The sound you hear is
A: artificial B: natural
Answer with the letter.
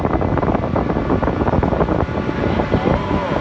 B